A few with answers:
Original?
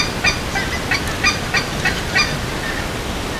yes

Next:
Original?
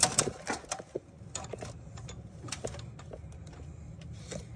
yes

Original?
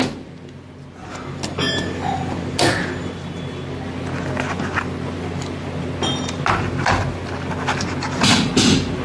yes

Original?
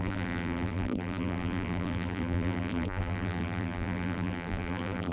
no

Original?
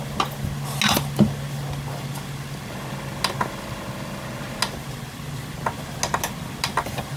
yes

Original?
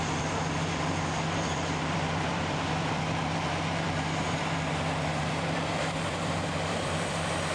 no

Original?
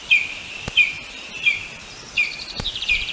no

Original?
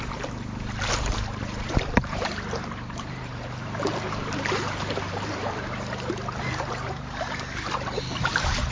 no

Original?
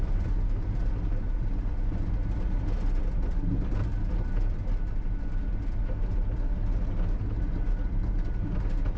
no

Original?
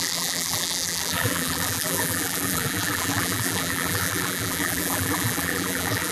no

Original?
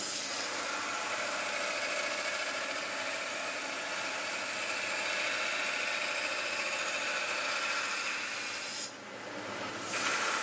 yes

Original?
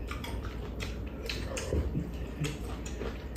no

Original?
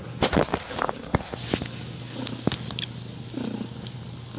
yes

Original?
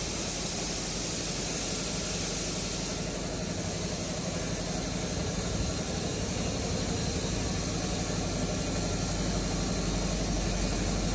yes